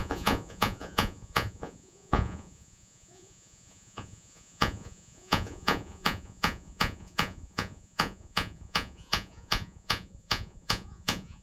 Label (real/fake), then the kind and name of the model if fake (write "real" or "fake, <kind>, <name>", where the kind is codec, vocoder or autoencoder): fake, vocoder, Vocos